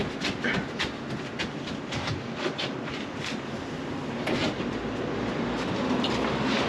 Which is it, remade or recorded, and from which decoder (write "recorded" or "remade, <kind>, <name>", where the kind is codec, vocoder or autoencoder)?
recorded